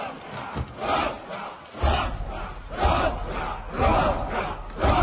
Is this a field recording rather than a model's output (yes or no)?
yes